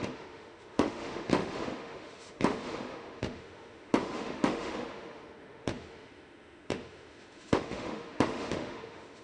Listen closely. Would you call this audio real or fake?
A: fake